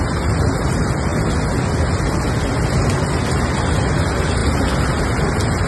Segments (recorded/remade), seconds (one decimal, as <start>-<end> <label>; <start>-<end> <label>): 0.0-5.7 recorded